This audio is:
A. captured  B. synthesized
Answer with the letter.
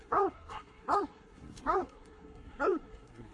B